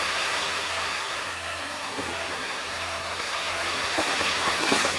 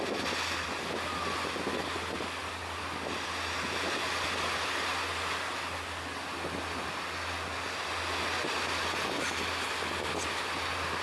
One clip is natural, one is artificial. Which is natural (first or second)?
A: second